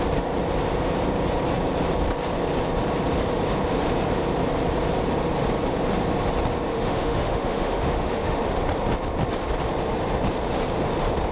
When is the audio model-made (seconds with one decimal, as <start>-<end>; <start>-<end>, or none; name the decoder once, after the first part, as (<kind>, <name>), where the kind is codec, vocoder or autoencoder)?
6.7-8.4 (autoencoder, DAC-VAE)